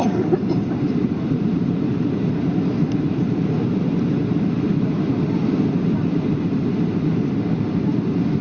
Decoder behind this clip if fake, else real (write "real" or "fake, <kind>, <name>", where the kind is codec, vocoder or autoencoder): fake, vocoder, BigVGAN v2